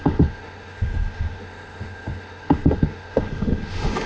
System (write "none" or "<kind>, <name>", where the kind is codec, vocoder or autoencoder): autoencoder, DAC-VAE